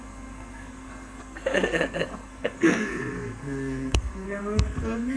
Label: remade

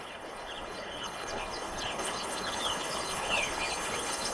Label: remade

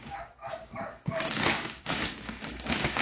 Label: remade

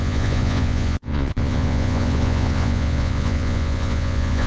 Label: remade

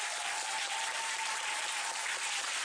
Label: recorded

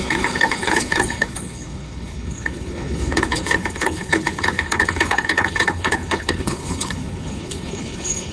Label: remade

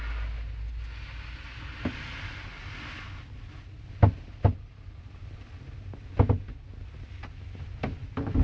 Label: recorded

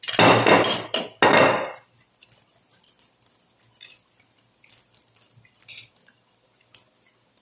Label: recorded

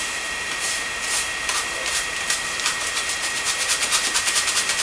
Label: remade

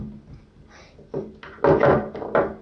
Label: recorded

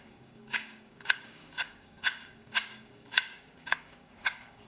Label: remade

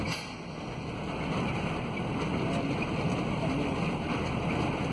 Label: recorded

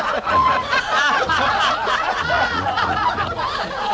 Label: remade